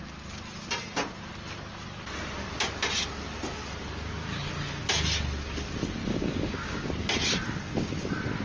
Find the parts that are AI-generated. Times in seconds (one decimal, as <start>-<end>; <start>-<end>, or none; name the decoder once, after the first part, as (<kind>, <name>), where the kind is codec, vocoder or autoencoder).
6.0-6.9 (codec, DAC)